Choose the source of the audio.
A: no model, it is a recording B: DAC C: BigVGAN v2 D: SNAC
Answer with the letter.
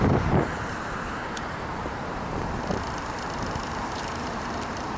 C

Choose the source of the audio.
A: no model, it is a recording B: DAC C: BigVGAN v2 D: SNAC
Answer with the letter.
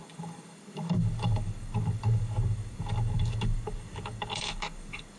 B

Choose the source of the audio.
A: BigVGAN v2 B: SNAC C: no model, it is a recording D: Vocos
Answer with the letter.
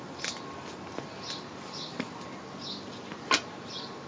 C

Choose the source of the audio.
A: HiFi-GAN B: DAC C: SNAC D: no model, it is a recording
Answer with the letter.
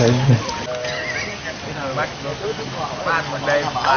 D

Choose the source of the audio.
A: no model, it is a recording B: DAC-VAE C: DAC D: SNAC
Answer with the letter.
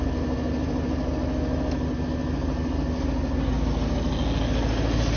A